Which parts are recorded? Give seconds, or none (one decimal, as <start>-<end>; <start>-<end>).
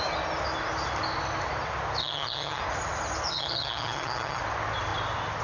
0.0-2.0; 2.6-3.3; 4.4-5.4